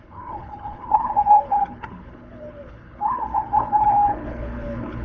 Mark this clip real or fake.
fake